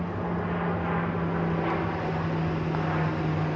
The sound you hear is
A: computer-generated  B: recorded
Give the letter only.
B